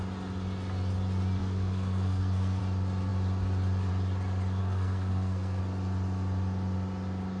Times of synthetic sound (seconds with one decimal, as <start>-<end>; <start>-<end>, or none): 1.4-2.6; 4.6-5.6